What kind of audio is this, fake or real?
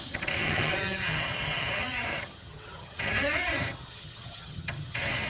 fake